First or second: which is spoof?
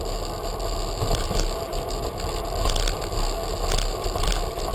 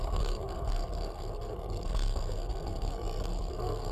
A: second